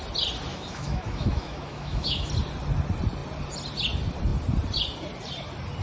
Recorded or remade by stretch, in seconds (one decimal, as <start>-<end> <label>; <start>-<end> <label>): 0.0-0.5 recorded; 0.5-2.3 remade; 2.3-5.8 recorded